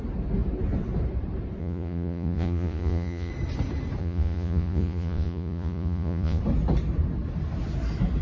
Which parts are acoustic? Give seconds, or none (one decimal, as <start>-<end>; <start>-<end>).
0.0-1.6; 3.3-4.0; 6.4-8.2